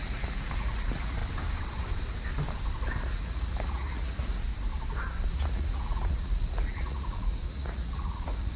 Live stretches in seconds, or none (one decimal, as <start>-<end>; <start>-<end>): 1.2-3.1; 4.5-5.3